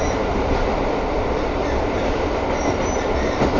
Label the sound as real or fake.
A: real